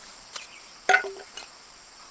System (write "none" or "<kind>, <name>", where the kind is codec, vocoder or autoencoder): vocoder, BigVGAN v2